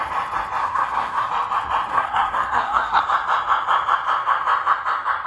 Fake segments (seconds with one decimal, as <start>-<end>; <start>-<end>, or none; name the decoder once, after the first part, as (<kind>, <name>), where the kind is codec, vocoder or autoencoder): 0.6-1.3 (codec, SNAC); 1.9-3.0